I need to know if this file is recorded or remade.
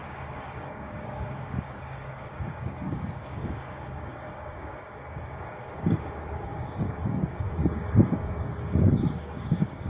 remade